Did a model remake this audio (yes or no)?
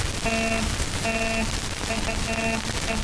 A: no